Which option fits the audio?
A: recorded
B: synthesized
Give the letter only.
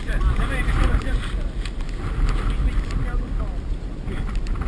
A